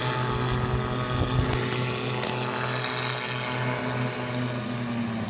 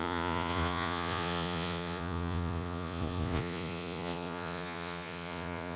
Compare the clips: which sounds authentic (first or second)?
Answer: first